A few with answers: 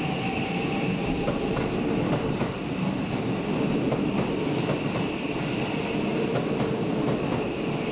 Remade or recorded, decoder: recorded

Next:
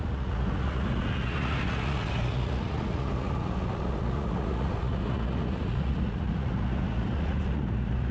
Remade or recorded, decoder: remade, vocoder, Vocos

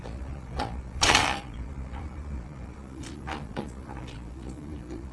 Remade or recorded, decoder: remade, vocoder, Vocos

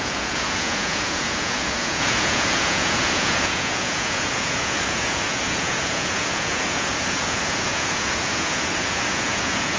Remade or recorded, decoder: remade, vocoder, Vocos